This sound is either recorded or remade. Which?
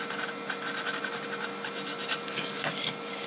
recorded